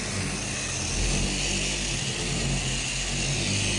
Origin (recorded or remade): recorded